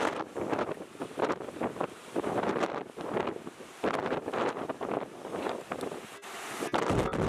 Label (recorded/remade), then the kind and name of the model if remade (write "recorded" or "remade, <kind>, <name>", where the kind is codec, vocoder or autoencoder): recorded